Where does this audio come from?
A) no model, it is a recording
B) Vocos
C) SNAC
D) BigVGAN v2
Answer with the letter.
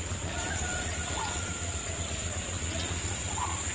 B